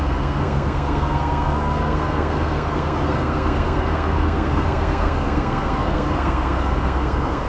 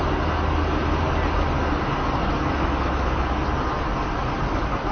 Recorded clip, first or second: second